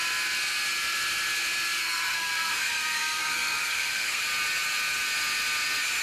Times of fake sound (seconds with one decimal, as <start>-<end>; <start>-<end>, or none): 1.8-4.2